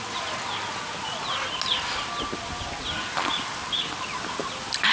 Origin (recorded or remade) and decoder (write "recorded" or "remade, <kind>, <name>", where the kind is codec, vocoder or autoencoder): recorded